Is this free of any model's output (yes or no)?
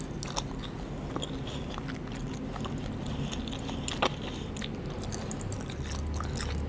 yes